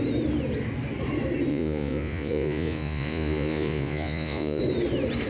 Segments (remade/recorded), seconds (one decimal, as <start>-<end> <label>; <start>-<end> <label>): 0.0-1.5 recorded; 1.5-4.6 remade; 4.6-5.3 recorded